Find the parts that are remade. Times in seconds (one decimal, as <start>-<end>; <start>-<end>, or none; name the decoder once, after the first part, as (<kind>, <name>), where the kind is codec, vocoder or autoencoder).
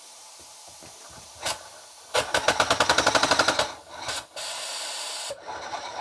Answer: 0.0-1.7 (vocoder, BigVGAN v2); 5.3-6.0